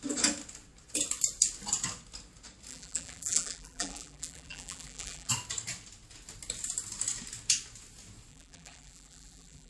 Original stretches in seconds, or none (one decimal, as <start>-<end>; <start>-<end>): 0.0-2.7; 5.3-8.3